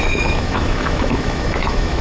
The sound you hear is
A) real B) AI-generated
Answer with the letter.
B